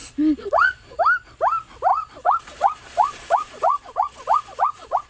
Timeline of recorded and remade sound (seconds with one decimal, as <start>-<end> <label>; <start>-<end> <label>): 0.0-1.0 remade; 1.0-1.9 recorded; 1.9-5.1 remade